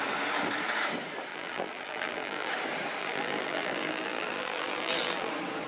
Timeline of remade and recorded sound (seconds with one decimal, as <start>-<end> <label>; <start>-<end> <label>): 0.0-1.3 recorded; 1.3-2.5 remade; 2.5-3.0 recorded; 3.0-5.3 remade; 5.3-5.7 recorded